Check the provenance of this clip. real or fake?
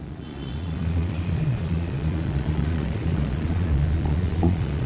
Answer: fake